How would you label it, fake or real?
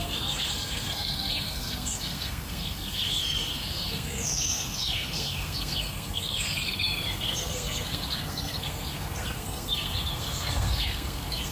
fake